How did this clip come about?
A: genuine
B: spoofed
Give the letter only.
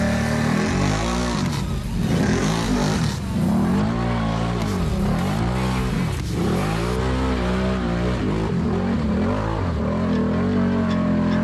A